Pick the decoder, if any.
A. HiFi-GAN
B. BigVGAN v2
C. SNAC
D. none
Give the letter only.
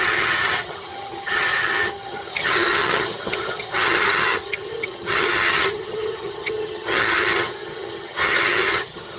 A